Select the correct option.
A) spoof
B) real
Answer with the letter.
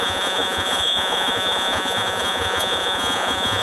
A